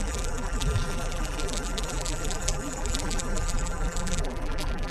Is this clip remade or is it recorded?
remade